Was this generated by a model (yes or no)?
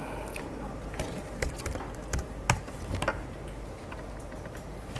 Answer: no